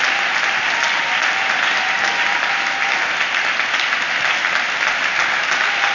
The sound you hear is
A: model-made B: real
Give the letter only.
B